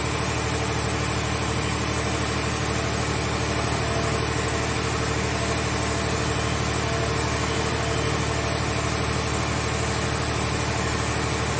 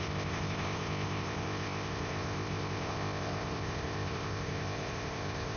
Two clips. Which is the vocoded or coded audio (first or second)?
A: second